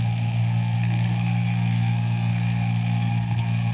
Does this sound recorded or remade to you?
remade